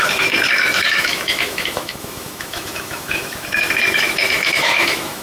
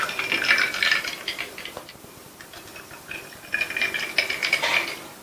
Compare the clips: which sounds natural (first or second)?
second